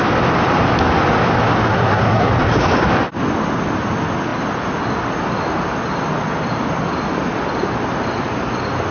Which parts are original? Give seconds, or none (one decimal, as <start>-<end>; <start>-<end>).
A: 0.0-1.7; 2.3-8.9